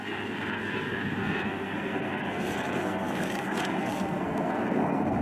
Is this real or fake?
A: fake